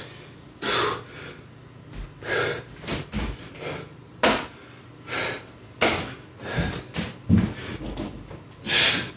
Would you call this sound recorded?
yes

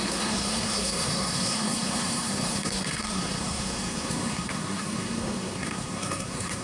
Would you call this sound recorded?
no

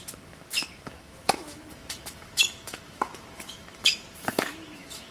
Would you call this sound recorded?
no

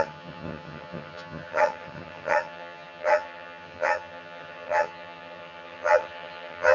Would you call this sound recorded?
no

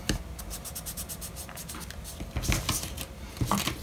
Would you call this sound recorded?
yes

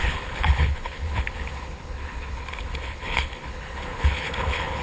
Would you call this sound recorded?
no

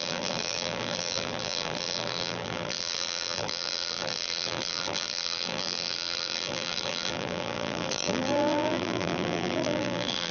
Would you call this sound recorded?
no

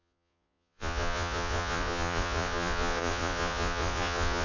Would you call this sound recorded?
no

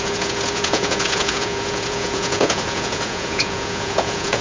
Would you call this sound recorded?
no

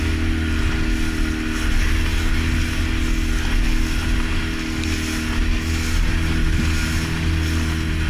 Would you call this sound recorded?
yes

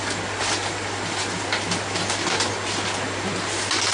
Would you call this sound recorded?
yes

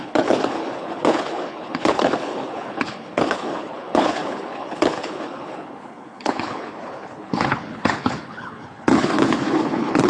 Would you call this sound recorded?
no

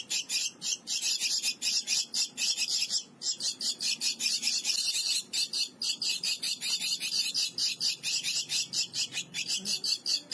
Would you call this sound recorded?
yes